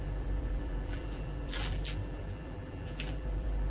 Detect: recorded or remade remade